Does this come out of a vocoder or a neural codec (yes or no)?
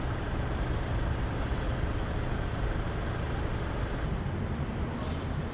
no